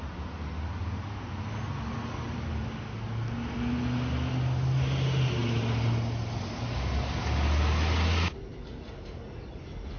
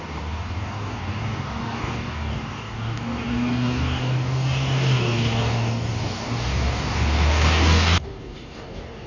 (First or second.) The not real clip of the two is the second